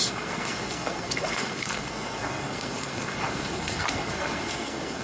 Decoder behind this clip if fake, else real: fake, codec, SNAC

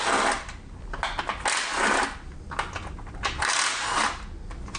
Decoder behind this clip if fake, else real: real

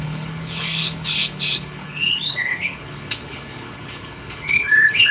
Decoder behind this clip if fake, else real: fake, codec, HILCodec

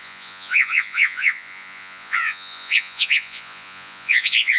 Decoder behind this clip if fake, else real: fake, vocoder, Vocos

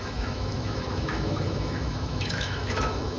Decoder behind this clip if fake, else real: fake, autoencoder, DAC-VAE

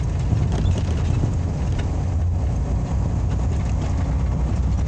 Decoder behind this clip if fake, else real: real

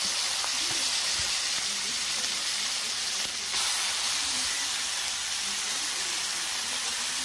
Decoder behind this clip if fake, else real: fake, vocoder, BigVGAN v2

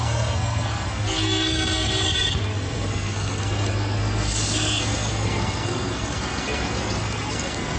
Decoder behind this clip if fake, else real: fake, codec, SNAC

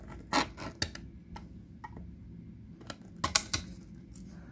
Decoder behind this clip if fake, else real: real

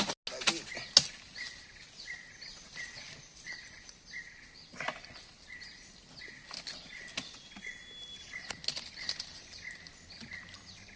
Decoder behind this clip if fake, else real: real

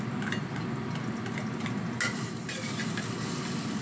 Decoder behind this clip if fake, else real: real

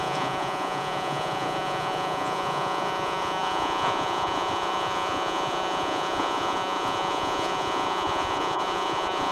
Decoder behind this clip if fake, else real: fake, vocoder, Vocos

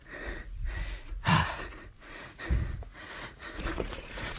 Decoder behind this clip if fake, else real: fake, vocoder, Vocos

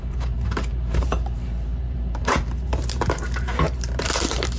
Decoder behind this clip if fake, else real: fake, vocoder, BigVGAN v2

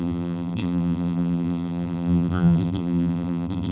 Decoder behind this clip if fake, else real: fake, vocoder, BigVGAN v2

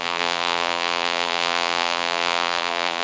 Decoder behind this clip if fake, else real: fake, vocoder, BigVGAN v2